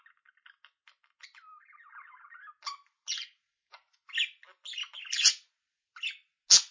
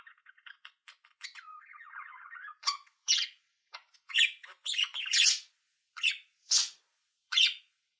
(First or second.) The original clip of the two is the first